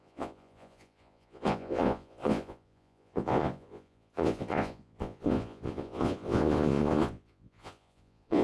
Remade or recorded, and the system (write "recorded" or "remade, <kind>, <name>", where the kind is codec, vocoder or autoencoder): remade, vocoder, Vocos